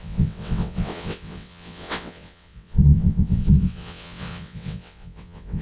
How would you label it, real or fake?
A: fake